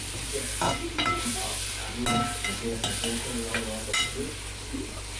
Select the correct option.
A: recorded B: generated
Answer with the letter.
A